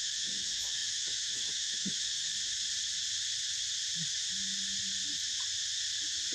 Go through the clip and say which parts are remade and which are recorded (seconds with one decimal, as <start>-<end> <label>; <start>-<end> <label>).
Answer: 0.0-2.3 remade; 2.3-6.3 recorded

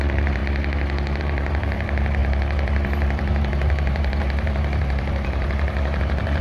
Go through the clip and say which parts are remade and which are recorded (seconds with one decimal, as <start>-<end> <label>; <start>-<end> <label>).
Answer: 0.0-0.4 remade; 0.4-1.2 recorded; 1.2-6.4 remade

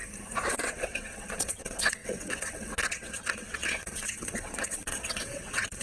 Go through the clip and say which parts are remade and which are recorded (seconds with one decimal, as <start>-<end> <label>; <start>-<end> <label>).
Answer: 0.0-0.5 recorded; 0.5-5.8 remade

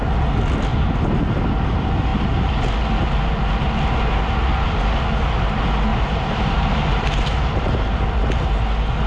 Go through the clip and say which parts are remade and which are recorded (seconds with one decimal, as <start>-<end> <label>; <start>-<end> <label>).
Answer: 0.0-0.7 recorded; 0.7-1.4 remade; 1.4-5.9 recorded; 5.9-7.7 remade; 7.7-9.1 recorded

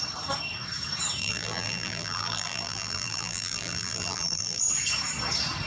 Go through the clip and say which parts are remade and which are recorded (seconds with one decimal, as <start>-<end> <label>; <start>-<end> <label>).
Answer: 0.0-1.2 recorded; 1.2-4.6 remade; 4.6-5.7 recorded

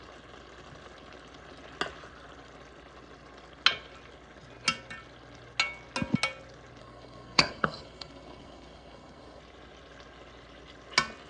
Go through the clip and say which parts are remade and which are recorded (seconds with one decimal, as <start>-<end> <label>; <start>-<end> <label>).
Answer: 0.0-6.8 recorded; 6.8-9.4 remade; 9.4-11.3 recorded